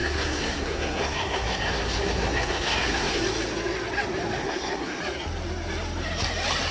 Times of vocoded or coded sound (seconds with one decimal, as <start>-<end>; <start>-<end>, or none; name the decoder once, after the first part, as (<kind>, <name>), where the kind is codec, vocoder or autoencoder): 0.0-3.2 (codec, SNAC); 4.4-5.0